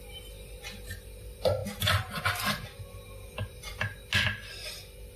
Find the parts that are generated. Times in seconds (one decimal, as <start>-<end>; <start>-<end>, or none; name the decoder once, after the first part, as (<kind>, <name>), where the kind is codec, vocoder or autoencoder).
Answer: none

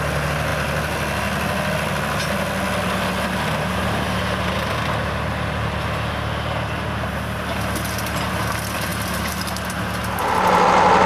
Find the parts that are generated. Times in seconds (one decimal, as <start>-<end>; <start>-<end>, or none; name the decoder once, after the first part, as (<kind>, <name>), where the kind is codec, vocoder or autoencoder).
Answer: none